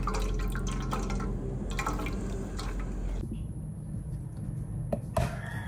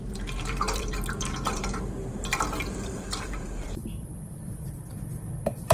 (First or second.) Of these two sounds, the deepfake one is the second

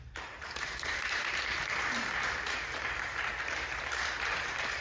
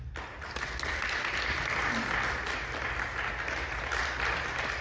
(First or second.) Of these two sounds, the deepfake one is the first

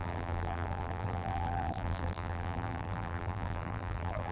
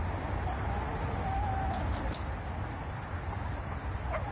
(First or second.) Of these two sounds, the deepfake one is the first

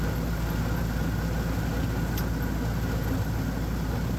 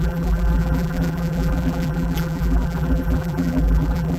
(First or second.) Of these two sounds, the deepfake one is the second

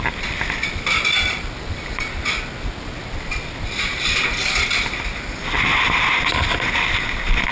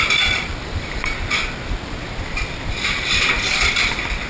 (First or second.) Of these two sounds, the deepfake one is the second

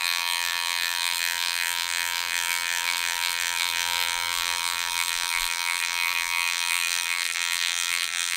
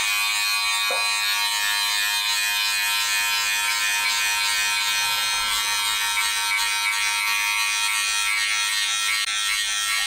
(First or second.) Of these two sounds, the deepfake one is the first